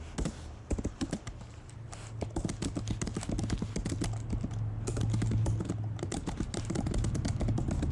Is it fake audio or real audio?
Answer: real